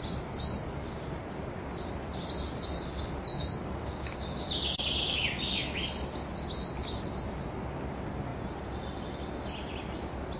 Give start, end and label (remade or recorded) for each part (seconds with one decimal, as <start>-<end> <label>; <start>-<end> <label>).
0.0-3.3 recorded; 3.3-4.3 remade; 4.3-10.4 recorded